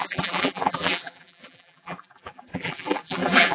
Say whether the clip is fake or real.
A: fake